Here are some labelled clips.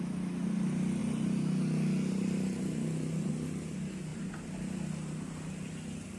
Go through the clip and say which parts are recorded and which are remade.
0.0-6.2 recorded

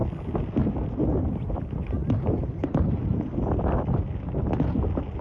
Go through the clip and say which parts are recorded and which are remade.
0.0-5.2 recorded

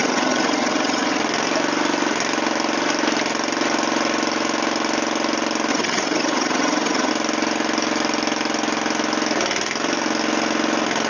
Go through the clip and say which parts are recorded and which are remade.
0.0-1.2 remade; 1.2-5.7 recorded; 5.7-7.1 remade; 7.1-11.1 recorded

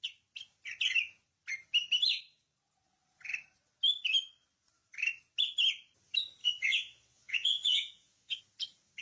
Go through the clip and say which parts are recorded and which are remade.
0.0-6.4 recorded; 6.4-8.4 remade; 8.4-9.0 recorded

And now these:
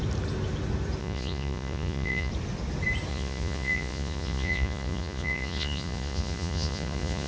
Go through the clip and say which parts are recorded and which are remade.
0.0-1.0 recorded; 1.0-2.3 remade; 2.3-3.1 recorded; 3.1-7.3 remade

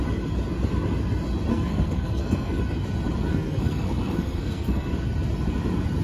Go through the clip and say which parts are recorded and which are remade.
0.0-1.5 recorded; 1.5-2.6 remade; 2.6-3.3 recorded; 3.3-4.9 remade; 4.9-6.0 recorded

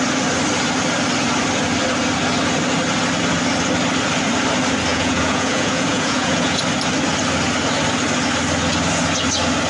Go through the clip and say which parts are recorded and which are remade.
0.0-4.9 recorded; 4.9-6.6 remade; 6.6-9.7 recorded